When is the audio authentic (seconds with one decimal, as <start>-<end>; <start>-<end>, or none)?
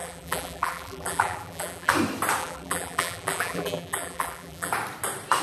1.9-2.4; 4.7-5.4